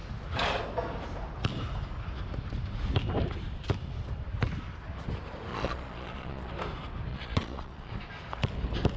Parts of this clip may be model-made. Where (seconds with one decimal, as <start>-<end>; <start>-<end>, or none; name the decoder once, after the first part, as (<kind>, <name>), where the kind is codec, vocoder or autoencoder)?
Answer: 5.5-6.5 (vocoder, Vocos); 7.1-7.9